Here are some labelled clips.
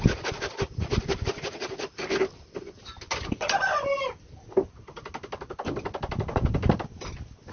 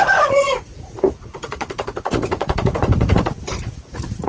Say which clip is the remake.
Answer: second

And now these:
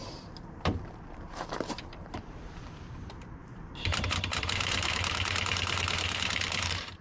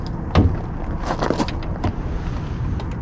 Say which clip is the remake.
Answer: first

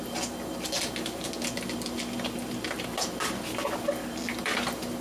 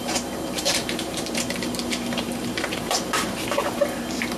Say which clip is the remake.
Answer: second